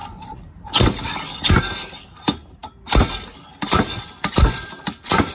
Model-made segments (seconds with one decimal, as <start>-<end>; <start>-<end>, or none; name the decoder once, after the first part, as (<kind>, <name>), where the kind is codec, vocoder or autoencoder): none